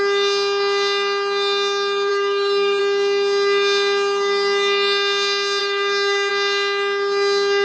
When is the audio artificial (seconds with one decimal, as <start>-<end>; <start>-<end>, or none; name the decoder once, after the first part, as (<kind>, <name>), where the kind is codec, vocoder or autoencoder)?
2.1-2.8 (codec, DAC); 5.6-6.3